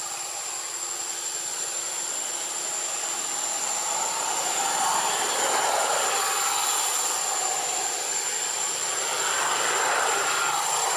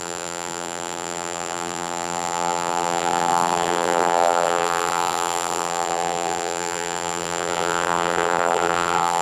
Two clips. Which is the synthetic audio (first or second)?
second